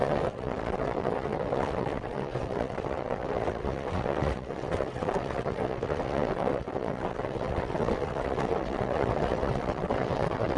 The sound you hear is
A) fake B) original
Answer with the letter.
A